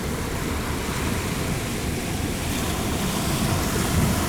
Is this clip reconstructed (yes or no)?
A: no